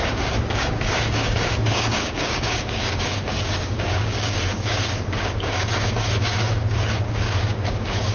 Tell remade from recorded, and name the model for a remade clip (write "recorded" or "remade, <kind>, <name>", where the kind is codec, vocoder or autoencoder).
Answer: remade, codec, DAC